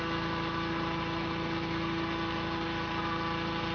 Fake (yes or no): no